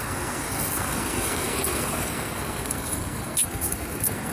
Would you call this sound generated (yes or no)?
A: yes